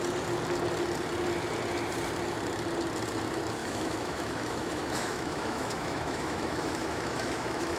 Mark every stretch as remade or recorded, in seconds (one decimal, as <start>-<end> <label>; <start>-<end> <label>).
0.0-3.6 recorded; 3.6-7.8 remade

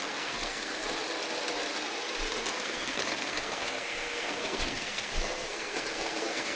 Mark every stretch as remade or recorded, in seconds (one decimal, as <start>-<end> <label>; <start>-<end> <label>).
0.0-0.8 remade; 0.8-2.5 recorded; 2.5-6.6 remade

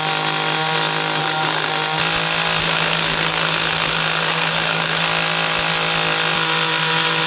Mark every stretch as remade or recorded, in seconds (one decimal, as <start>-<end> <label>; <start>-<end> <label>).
0.0-1.2 recorded; 1.2-1.7 remade; 1.7-2.6 recorded; 2.6-5.0 remade; 5.0-7.3 recorded

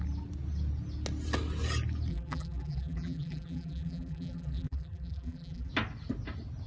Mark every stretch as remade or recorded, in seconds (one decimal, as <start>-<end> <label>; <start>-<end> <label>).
0.0-2.1 recorded; 2.1-5.7 remade; 5.7-6.7 recorded

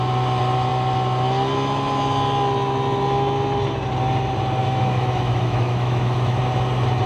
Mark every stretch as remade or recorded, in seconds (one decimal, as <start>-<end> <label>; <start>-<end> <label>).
0.0-4.6 recorded; 4.6-6.4 remade; 6.4-7.1 recorded

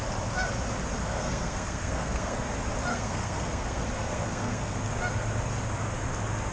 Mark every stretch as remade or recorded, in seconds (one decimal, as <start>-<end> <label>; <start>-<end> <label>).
0.0-1.0 recorded; 1.0-2.4 remade; 2.4-2.9 recorded; 2.9-4.8 remade; 4.8-6.5 recorded